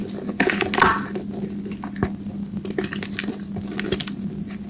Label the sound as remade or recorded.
recorded